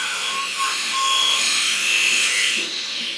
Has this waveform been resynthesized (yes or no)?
yes